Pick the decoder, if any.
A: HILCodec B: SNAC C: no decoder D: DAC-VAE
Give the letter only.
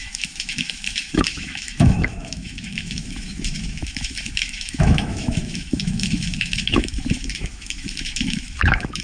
D